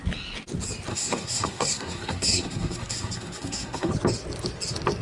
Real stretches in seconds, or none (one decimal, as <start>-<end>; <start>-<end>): 0.0-0.9; 3.9-5.0